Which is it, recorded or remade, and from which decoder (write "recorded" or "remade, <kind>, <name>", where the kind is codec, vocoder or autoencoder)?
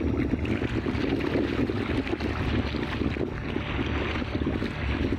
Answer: recorded